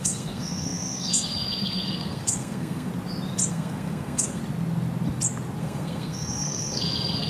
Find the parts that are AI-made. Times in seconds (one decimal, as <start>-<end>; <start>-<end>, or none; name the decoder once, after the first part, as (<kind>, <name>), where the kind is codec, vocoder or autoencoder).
0.0-2.9 (codec, SNAC); 3.5-4.4; 5.6-7.3